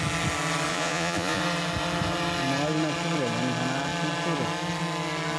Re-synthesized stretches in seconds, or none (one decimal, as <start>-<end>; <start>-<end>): 0.7-1.4